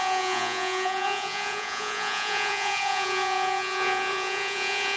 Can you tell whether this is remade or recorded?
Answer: remade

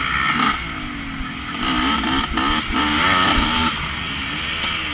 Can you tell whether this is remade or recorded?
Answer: recorded